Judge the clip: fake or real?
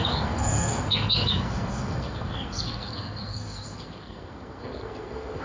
fake